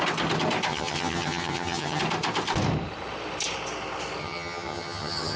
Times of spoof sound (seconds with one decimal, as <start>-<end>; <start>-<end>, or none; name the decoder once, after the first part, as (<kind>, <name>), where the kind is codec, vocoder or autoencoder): 0.7-2.0 (vocoder, HiFi-GAN); 4.2-5.4